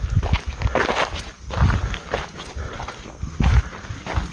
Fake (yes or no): no